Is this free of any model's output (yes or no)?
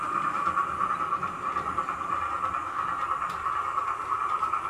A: no